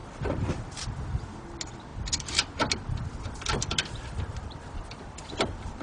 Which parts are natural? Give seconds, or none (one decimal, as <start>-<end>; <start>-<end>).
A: 0.0-5.8